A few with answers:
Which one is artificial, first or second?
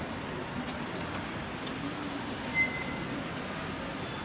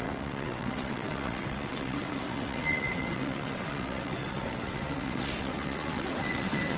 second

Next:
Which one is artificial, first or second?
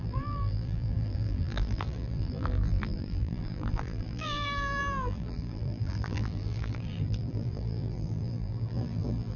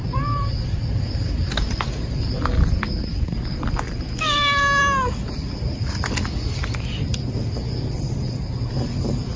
first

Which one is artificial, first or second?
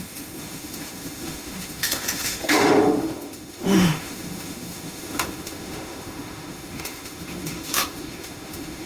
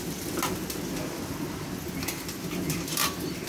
first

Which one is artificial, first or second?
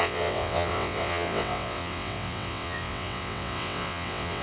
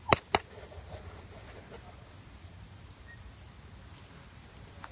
first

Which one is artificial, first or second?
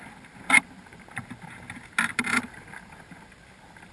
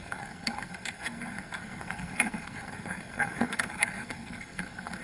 second